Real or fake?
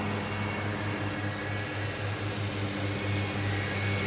real